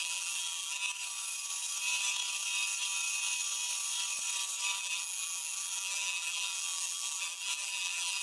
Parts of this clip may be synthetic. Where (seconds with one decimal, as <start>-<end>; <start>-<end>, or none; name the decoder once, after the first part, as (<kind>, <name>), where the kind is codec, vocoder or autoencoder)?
0.0-0.8 (vocoder, BigVGAN v2); 4.8-8.2